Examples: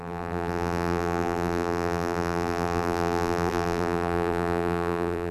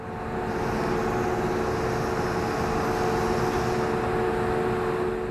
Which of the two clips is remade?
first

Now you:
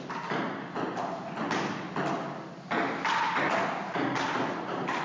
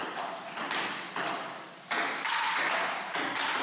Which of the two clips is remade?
second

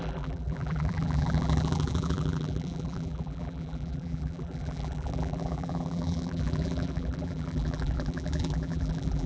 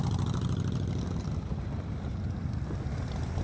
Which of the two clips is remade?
first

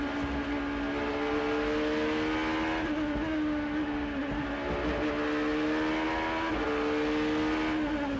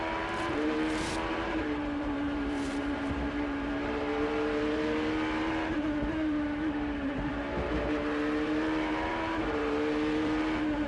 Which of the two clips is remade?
second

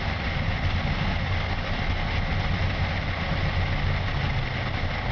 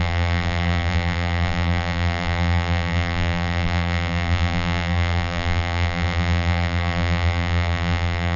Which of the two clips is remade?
second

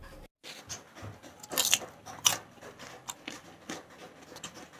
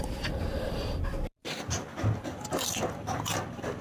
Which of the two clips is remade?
second